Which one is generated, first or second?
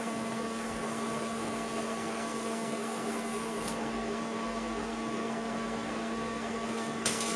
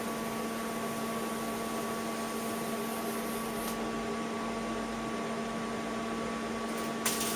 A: first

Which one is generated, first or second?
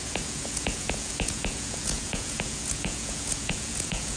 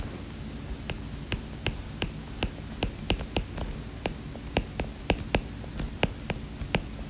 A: first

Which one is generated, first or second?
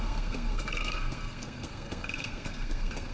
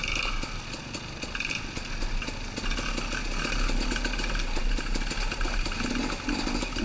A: first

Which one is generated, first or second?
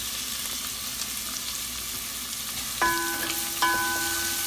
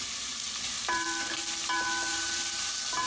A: second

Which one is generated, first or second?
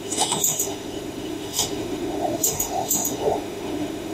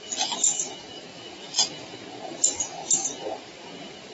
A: first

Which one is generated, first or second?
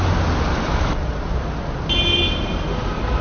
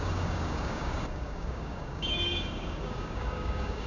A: second